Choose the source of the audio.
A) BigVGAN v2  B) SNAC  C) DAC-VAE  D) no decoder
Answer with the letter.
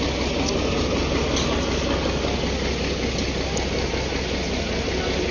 D